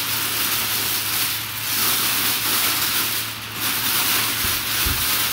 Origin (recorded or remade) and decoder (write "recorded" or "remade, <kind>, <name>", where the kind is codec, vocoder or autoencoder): recorded